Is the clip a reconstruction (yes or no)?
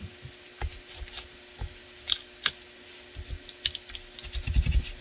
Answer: no